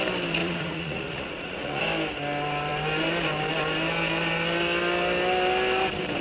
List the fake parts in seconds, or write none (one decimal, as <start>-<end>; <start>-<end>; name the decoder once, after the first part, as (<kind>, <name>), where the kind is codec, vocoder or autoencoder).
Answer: 0.4-1.8 (vocoder, Vocos)

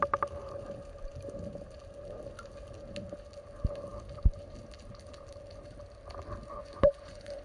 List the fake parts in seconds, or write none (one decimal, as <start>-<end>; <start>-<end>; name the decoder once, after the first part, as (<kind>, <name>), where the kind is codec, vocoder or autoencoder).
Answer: 6.6-7.4 (vocoder, Vocos)